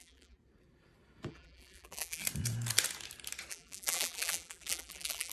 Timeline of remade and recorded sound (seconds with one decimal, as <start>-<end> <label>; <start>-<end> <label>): 0.0-0.4 remade; 0.4-1.3 recorded; 1.3-2.2 remade; 2.2-3.5 recorded; 3.5-5.3 remade